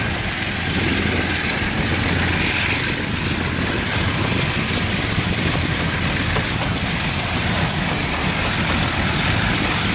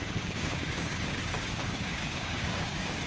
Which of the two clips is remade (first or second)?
second